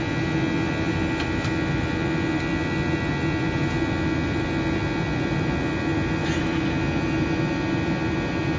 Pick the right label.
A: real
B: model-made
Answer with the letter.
A